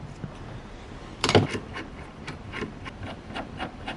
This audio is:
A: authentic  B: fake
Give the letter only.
B